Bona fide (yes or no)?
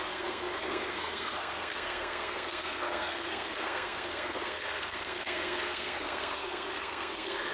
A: no